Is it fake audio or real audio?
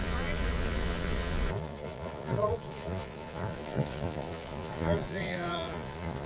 fake